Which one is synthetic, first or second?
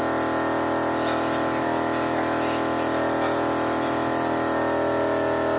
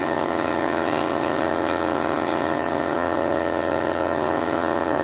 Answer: second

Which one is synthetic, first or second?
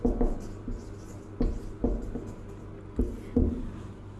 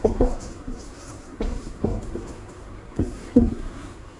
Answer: second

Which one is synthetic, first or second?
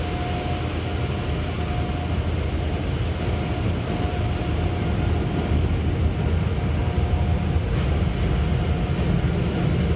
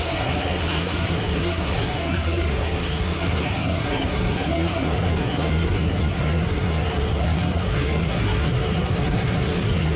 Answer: second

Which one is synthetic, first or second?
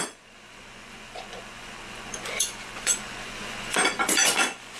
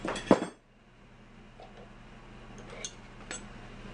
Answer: first